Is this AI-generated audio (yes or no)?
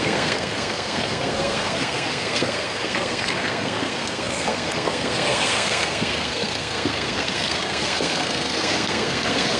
yes